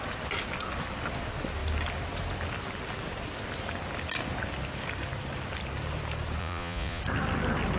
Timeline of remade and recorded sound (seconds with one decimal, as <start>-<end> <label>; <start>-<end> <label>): 0.0-6.4 recorded; 6.4-7.0 remade; 7.0-7.8 recorded